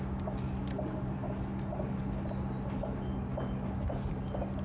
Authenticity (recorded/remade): recorded